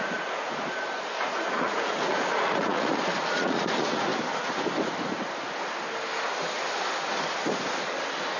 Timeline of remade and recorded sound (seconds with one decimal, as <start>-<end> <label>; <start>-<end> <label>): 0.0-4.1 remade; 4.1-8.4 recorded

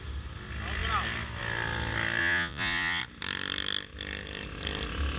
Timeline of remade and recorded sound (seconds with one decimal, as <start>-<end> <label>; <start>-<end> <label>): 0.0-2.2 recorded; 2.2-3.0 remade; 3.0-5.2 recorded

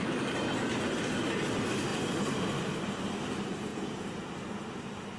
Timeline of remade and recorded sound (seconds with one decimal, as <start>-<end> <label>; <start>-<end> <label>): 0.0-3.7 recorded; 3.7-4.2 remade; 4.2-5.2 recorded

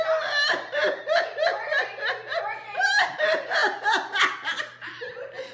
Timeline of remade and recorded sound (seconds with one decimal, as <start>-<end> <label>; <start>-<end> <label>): 0.0-5.5 recorded

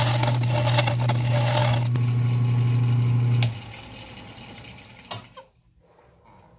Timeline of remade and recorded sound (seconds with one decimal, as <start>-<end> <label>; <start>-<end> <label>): 0.0-6.6 recorded